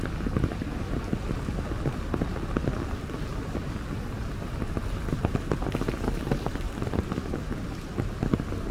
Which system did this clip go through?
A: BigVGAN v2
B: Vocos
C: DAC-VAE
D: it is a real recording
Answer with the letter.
D